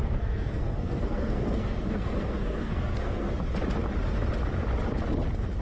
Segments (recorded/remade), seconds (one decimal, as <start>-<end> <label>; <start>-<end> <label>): 0.0-3.4 remade; 3.4-5.6 recorded